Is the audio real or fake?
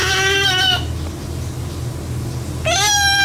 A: real